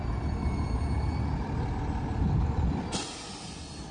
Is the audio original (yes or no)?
yes